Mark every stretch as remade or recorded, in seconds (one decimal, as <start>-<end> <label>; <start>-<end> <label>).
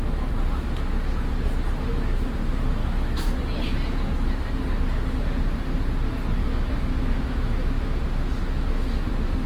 0.0-2.8 recorded; 2.8-3.3 remade; 3.3-6.4 recorded; 6.4-8.0 remade; 8.0-8.4 recorded; 8.4-9.1 remade; 9.1-9.5 recorded